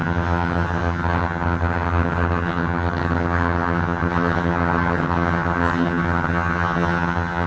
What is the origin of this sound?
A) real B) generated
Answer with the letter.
B